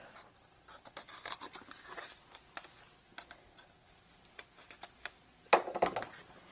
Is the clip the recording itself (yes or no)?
yes